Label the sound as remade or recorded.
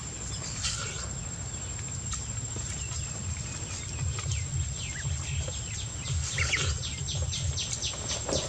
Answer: recorded